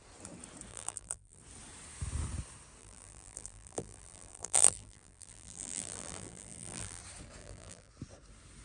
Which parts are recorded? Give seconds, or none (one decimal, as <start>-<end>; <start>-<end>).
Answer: 0.0-0.7; 1.4-2.8; 7.0-7.4; 7.9-8.6